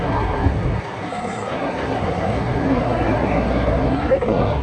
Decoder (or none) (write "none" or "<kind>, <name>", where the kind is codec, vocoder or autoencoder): codec, SNAC